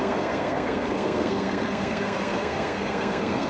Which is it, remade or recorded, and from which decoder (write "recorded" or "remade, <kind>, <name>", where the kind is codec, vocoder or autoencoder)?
remade, codec, SNAC